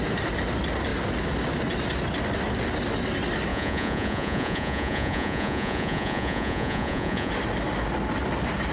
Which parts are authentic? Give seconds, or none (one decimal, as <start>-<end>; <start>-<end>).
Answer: 0.0-3.5; 7.3-8.7